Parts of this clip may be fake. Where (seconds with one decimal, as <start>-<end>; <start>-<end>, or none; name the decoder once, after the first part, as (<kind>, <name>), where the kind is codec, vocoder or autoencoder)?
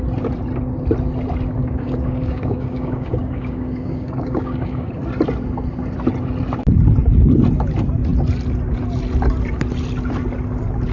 1.6-4.9 (codec, DAC)